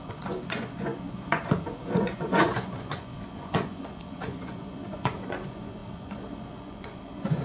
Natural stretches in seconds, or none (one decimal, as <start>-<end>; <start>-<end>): none